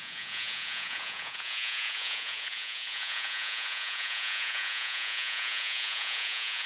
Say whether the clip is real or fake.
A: fake